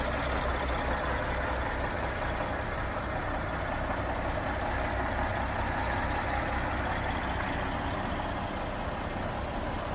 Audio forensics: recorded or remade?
recorded